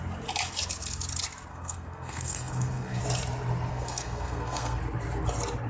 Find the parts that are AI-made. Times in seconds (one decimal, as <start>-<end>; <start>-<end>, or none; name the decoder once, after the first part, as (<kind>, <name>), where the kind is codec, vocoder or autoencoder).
1.5-3.0 (codec, SNAC); 3.7-4.8